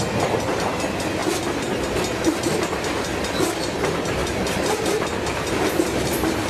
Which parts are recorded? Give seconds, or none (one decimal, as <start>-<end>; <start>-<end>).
0.0-6.5